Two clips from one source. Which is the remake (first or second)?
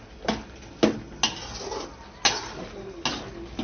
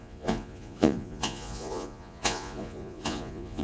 second